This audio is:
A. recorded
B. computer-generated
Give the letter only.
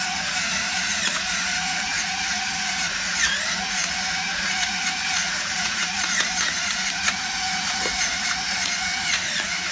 B